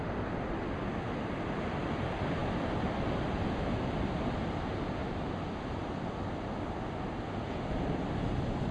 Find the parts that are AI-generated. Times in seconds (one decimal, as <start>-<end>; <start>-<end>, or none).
none